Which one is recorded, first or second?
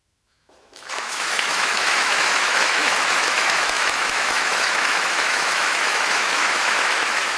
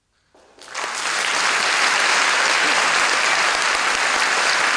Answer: second